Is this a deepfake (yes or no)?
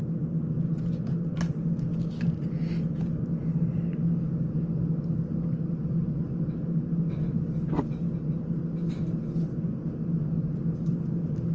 no